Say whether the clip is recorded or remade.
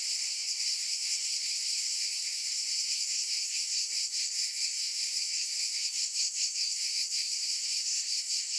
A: remade